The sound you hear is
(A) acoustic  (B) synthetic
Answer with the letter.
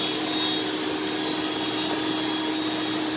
A